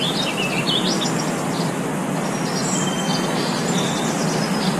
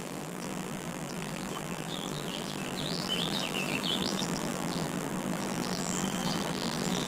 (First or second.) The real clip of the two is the first